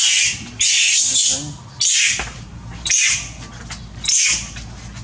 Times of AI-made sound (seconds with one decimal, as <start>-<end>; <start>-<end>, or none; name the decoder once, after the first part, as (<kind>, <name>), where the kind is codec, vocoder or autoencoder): none